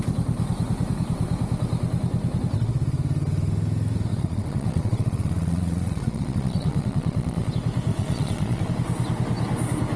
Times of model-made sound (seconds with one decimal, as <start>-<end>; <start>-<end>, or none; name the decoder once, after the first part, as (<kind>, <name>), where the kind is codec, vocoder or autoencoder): 4.1-7.5 (vocoder, Vocos); 7.9-8.7